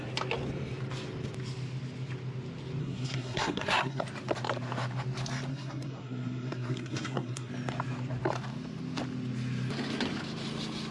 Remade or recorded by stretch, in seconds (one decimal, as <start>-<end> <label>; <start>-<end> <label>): 0.0-2.8 recorded; 2.8-4.0 remade; 4.0-5.5 recorded; 5.5-7.5 remade; 7.5-10.9 recorded